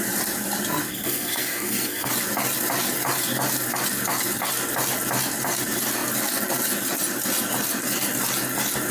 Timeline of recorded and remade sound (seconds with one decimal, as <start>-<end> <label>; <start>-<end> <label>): 0.0-0.9 recorded; 0.9-2.1 remade; 2.1-8.9 recorded